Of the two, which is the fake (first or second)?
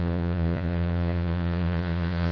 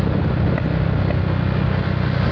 first